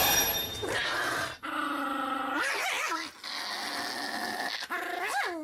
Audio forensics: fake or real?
real